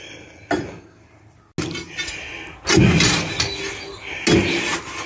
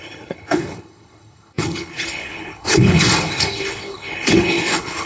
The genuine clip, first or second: first